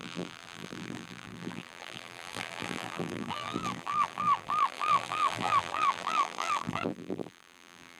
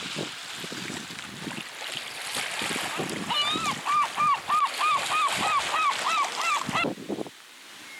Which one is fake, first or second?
first